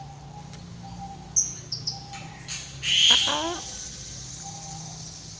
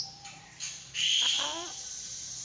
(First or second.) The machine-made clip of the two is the second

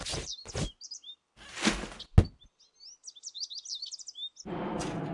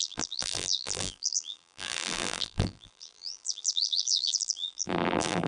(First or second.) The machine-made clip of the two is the second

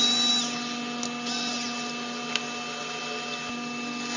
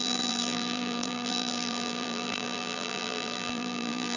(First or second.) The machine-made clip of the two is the second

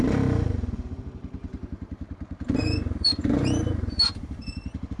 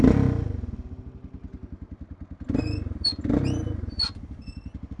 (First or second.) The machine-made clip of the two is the first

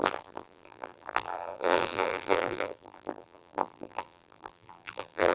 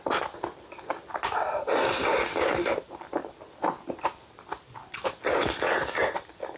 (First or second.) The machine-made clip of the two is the first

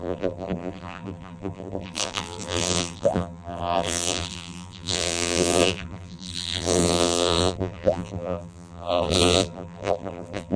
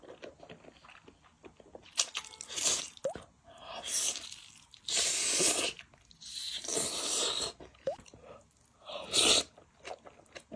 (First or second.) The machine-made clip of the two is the first